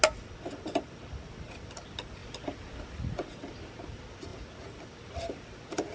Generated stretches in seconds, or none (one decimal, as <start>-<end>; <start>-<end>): none